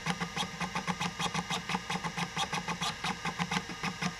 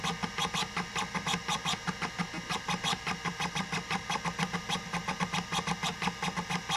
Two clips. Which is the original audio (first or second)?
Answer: second